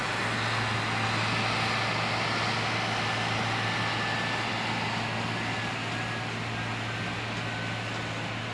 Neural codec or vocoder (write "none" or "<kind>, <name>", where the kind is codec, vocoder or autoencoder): none